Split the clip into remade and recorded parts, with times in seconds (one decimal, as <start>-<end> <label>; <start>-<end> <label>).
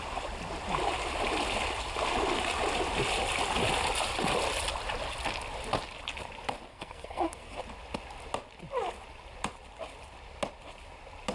0.0-6.7 recorded; 6.7-7.6 remade; 7.6-11.3 recorded